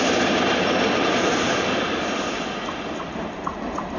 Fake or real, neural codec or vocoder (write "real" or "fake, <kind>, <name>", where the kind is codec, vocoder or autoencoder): fake, vocoder, BigVGAN v2